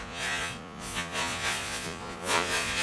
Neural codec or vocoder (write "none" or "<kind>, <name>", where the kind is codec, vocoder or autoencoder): vocoder, Vocos